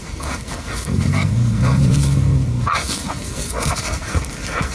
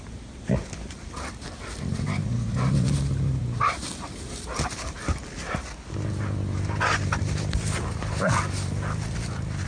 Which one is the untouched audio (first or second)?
second